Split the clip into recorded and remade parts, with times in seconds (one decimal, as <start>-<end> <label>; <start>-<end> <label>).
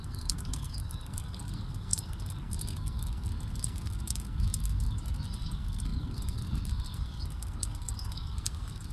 0.0-8.9 remade